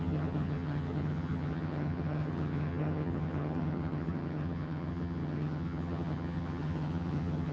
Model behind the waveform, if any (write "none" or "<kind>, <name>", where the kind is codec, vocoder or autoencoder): vocoder, HiFi-GAN